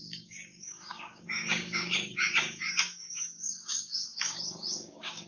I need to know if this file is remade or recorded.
remade